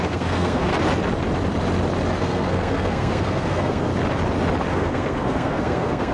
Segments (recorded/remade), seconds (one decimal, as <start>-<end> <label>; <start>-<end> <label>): 0.0-0.7 remade; 0.7-2.2 recorded; 2.2-3.9 remade; 3.9-4.7 recorded; 4.7-6.1 remade